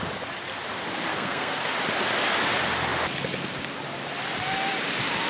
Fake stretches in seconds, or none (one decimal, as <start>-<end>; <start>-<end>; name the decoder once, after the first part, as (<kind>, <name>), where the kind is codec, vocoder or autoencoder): 1.1-1.7 (codec, SNAC)